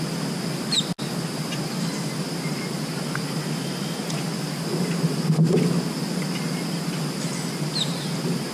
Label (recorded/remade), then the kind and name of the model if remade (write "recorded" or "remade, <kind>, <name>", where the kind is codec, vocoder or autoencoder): recorded